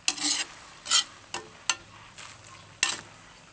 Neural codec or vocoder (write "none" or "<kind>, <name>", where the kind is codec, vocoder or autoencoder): none